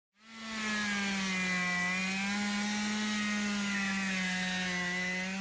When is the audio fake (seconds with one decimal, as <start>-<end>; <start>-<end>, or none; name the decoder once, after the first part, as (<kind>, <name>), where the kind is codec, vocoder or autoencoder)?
none